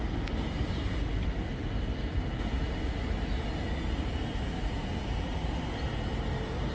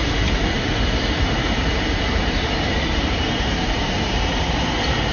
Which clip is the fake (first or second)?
second